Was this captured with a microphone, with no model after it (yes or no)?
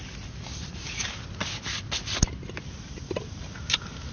yes